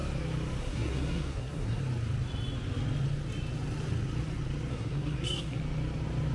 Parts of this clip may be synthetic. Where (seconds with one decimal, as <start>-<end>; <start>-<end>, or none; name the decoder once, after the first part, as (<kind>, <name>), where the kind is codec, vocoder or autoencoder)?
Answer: 0.6-1.8 (codec, SNAC); 4.7-5.6